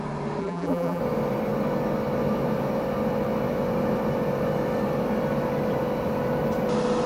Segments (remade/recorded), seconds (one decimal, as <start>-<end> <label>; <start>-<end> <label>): 0.0-0.4 recorded; 0.4-1.0 remade; 1.0-7.1 recorded